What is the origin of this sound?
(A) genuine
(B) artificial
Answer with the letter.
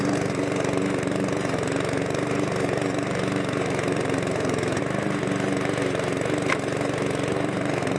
B